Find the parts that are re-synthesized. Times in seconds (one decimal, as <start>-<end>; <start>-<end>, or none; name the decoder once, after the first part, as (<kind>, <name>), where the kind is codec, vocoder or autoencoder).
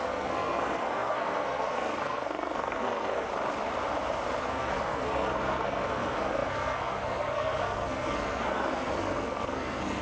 0.0-3.3 (codec, SNAC); 4.4-10.0